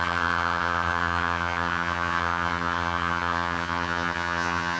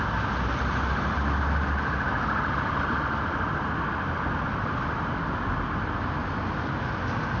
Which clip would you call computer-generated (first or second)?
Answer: first